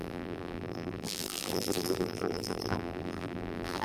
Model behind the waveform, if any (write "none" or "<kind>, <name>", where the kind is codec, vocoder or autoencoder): vocoder, BigVGAN v2